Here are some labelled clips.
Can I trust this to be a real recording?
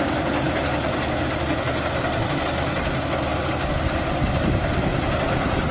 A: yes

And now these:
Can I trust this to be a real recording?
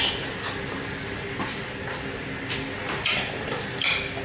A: no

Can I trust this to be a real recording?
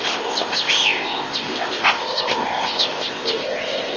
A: no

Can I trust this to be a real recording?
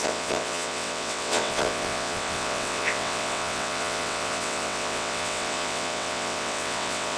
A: no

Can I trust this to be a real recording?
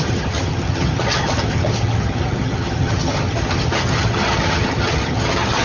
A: no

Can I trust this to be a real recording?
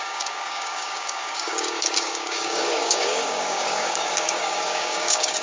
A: no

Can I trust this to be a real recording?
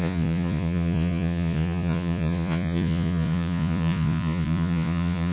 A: no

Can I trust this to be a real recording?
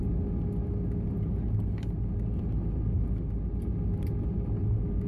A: yes